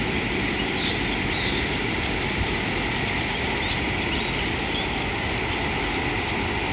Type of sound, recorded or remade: recorded